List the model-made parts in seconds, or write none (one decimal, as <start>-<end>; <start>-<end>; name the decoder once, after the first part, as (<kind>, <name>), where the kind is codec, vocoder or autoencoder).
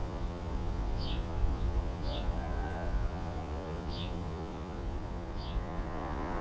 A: 0.0-6.4 (vocoder, Vocos)